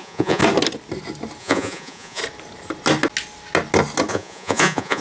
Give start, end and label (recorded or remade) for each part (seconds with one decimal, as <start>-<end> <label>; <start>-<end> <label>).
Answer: 0.0-0.4 remade; 0.4-1.4 recorded; 1.4-2.2 remade; 2.2-4.1 recorded; 4.1-5.0 remade